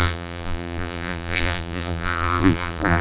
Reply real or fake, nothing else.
fake